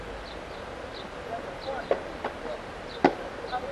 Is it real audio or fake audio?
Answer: real